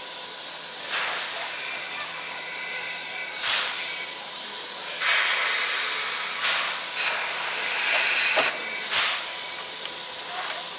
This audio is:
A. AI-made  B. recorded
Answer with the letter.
A